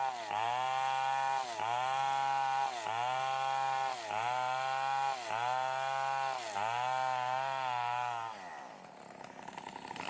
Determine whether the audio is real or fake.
real